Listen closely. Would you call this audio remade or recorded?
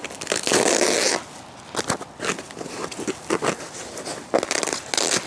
recorded